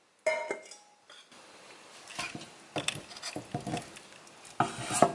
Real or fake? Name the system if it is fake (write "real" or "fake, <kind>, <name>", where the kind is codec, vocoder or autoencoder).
real